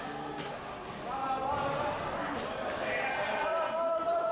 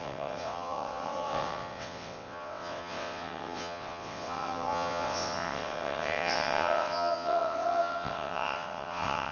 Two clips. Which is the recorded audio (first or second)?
first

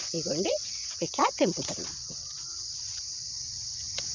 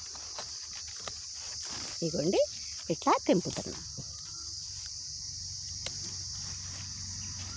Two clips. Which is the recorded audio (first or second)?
second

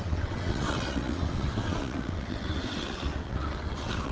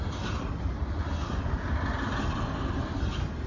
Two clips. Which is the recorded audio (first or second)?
second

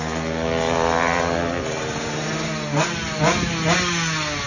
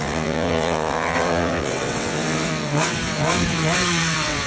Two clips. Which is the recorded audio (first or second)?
first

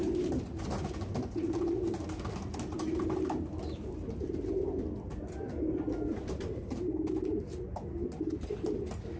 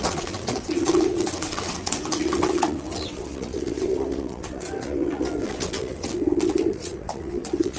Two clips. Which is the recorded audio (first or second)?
first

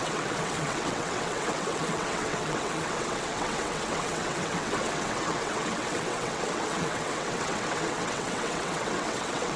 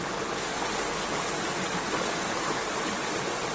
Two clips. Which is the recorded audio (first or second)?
second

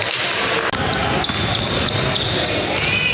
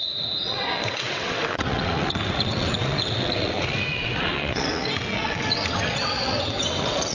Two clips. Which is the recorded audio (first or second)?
first